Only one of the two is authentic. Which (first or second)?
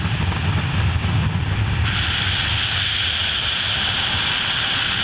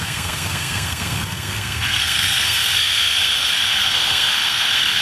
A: first